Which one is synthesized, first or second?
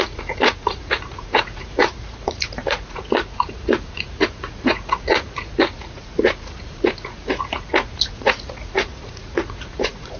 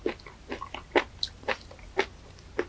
first